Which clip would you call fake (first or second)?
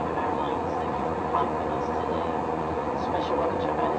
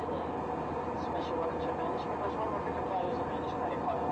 first